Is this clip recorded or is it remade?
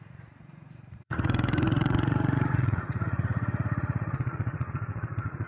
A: remade